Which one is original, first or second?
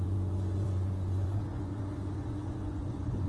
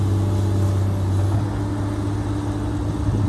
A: second